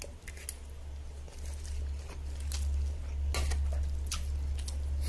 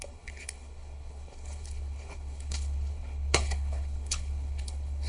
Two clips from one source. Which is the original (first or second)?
first